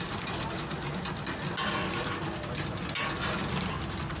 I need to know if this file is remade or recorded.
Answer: recorded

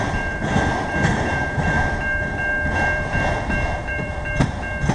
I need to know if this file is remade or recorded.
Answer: remade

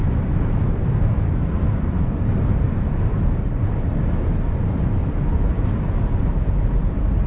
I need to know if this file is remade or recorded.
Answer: remade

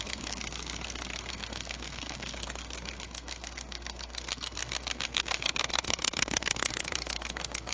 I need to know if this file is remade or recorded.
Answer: remade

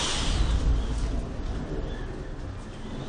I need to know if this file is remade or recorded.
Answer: recorded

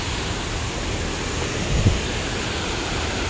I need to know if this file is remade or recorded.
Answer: recorded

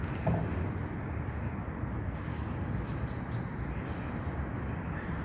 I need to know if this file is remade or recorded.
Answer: recorded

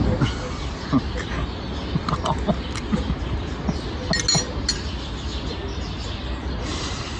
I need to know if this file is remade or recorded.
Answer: recorded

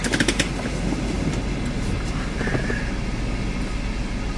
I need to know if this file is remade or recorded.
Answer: recorded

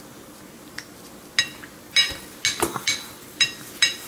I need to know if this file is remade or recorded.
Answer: recorded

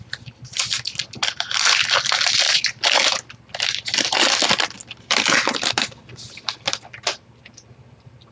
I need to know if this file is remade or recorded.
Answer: recorded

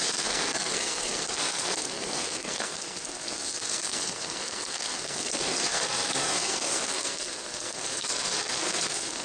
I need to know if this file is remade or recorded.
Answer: remade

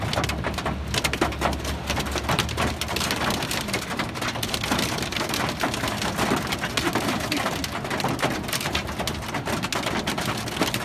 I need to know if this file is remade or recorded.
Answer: recorded